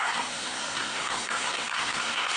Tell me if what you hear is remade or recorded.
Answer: remade